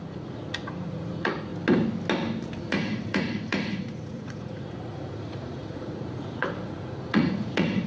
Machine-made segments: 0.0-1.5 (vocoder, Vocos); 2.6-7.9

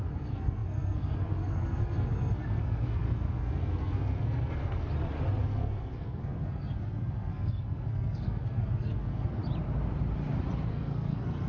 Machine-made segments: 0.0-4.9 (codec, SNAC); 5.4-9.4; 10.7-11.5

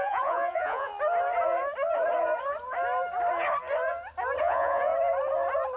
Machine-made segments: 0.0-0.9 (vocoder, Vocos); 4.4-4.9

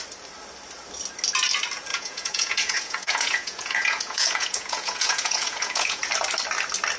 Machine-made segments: 1.9-6.1 (vocoder, Vocos)

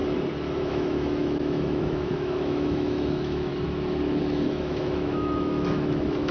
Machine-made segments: 0.7-3.5 (autoencoder, DAC-VAE); 4.2-6.3

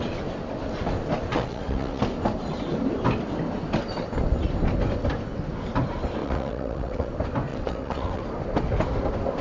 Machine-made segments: 1.3-2.0 (vocoder, WaveNeXt); 6.2-7.1; 7.5-8.2